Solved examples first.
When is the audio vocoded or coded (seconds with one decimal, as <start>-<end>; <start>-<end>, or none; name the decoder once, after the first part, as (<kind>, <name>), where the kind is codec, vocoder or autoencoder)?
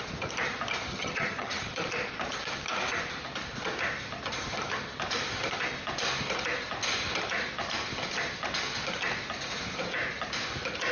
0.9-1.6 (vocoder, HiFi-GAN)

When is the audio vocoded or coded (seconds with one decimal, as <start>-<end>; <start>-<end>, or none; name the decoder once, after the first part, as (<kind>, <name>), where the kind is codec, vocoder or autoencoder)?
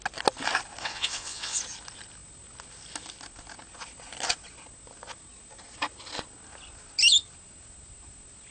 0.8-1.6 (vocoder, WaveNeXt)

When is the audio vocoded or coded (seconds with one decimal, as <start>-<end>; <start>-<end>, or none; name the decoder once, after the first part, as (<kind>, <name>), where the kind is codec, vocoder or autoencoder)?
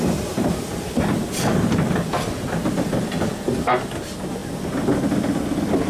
none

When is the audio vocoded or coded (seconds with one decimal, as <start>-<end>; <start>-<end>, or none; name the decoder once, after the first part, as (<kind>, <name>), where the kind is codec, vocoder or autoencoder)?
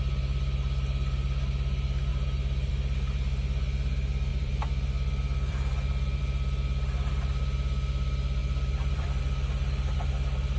2.1-2.7 (vocoder, BigVGAN v2); 4.3-6.2; 8.4-9.2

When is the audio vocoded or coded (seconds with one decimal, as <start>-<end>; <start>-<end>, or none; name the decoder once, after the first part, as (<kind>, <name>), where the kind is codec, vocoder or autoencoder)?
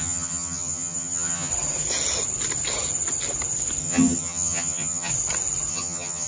0.0-1.5 (vocoder, HiFi-GAN); 3.8-5.1; 5.7-6.3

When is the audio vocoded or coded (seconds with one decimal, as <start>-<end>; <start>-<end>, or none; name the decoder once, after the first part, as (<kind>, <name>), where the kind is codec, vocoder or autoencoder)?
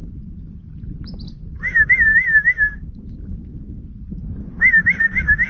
none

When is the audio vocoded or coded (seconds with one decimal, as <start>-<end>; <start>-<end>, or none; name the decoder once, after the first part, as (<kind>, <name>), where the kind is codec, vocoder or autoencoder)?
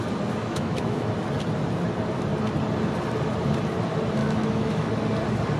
0.4-1.1 (autoencoder, DAC-VAE); 4.2-4.9